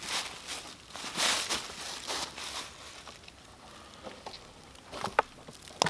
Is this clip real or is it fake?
real